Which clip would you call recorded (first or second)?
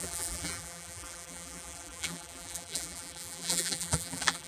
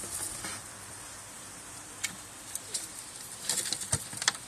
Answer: second